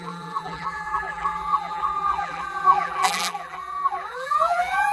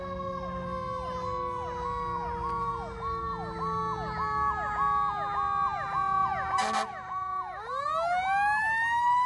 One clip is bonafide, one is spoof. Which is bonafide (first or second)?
second